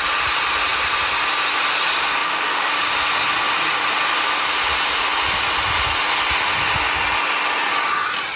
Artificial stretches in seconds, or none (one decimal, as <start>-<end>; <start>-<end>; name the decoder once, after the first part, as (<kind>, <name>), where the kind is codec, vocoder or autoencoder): 2.2-2.9 (codec, DAC)